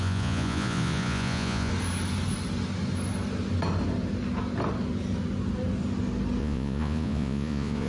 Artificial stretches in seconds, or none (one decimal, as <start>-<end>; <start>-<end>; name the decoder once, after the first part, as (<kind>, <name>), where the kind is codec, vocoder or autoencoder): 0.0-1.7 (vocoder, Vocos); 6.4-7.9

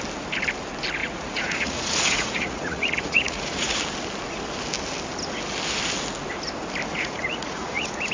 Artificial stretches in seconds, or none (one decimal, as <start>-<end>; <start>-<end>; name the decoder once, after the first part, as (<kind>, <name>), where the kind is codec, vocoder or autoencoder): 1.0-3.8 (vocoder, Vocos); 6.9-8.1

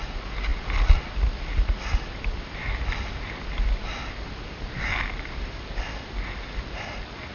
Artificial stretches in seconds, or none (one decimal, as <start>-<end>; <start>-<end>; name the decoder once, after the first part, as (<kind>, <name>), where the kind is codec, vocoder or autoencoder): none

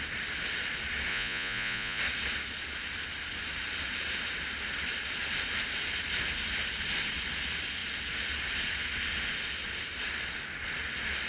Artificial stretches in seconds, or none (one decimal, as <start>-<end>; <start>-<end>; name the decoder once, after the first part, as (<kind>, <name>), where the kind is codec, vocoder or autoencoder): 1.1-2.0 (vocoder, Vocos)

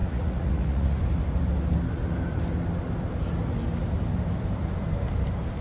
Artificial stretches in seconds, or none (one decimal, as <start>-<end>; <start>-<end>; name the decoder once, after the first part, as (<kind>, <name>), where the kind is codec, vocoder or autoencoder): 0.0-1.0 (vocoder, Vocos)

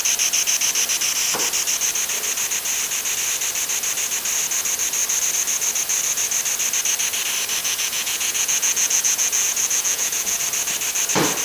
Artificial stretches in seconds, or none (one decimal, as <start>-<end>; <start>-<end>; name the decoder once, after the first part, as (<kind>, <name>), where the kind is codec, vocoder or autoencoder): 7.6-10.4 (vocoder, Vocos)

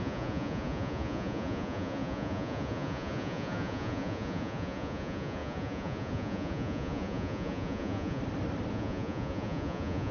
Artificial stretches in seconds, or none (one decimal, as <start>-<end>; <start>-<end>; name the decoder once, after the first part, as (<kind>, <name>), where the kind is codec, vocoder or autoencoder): 0.0-8.2 (vocoder, Vocos); 8.7-10.1

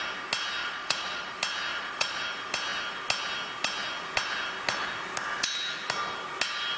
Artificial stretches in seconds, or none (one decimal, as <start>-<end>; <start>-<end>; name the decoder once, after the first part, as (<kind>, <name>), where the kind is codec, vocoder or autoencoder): 0.6-1.2 (vocoder, Vocos); 1.7-2.2